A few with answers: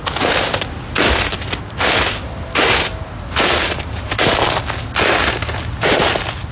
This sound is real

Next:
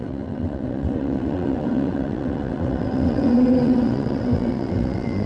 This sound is fake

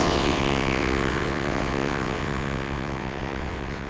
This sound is fake